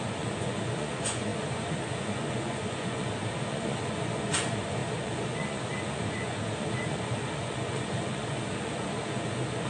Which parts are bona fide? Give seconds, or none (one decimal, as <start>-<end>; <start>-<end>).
none